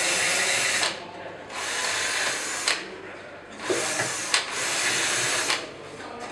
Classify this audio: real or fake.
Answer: real